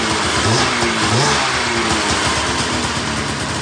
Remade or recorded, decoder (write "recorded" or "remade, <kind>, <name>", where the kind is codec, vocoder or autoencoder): recorded